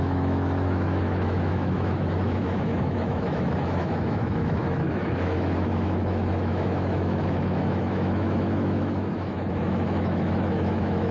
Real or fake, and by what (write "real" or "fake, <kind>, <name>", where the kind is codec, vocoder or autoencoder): fake, autoencoder, DAC-VAE